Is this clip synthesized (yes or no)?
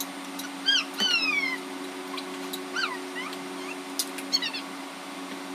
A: no